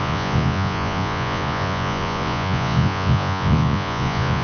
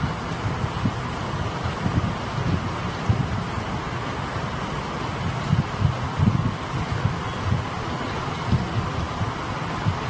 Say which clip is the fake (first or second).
first